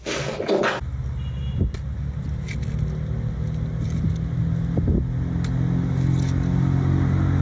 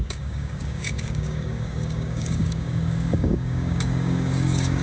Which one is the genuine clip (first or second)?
first